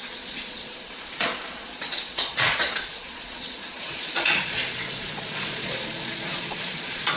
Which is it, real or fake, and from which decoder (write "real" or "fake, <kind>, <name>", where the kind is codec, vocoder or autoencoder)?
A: fake, vocoder, Vocos